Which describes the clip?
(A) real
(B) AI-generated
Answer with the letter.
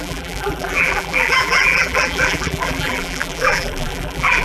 B